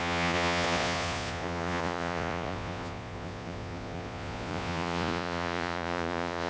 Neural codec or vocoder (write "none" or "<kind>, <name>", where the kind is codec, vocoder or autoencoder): vocoder, Vocos